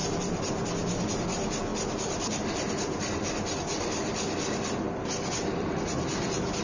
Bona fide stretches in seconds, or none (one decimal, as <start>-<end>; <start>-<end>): 0.0-1.7; 5.7-6.6